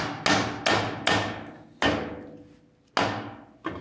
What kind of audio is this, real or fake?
real